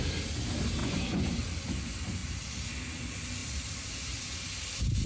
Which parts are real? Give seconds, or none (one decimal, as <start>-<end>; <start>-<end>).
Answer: 0.0-0.8; 1.3-5.1

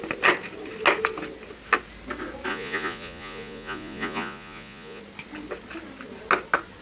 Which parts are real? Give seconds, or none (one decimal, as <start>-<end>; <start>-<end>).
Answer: 0.0-2.5; 5.0-6.8

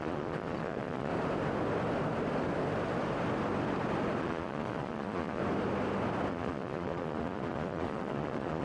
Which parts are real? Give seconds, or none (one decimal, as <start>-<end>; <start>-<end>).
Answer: 1.1-4.2; 5.4-6.3

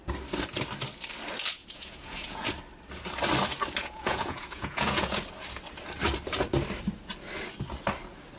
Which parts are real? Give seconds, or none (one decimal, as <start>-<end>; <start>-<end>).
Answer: 0.0-1.6; 2.5-3.8; 5.2-8.4

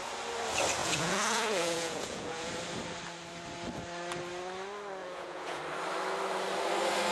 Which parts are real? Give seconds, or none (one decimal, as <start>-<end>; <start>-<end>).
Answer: 0.0-0.8; 2.5-5.0; 5.6-7.1